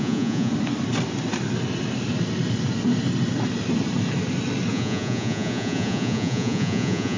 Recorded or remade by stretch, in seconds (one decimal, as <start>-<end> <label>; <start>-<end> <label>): 0.0-0.5 remade; 0.5-4.7 recorded; 4.7-7.2 remade